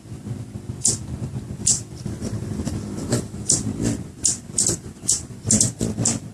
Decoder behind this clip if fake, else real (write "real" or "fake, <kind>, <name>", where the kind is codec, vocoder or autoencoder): fake, vocoder, BigVGAN v2